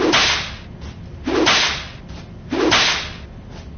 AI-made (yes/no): no